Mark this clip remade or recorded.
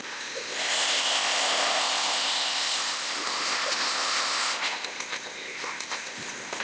remade